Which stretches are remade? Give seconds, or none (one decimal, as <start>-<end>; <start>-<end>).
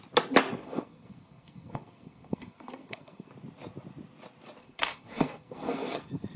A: 0.6-3.3; 4.6-6.4